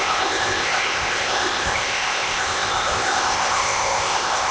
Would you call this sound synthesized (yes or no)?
yes